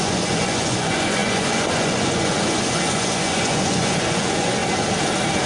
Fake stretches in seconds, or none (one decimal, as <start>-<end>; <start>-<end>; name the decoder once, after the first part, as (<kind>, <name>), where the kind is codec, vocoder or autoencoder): 0.0-4.6 (vocoder, Vocos)